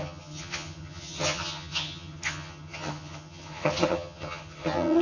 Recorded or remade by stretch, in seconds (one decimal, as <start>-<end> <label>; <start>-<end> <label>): 0.0-5.0 remade